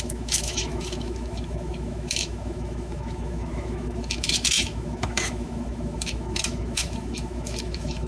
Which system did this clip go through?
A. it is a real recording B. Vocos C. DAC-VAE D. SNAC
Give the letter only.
C